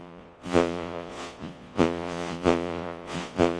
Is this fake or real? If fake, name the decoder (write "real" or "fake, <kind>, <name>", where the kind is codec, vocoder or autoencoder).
fake, vocoder, Vocos